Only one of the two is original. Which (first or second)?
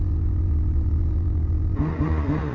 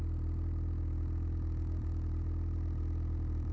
second